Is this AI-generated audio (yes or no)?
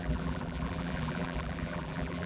yes